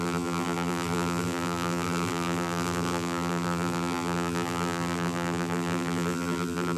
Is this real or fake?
fake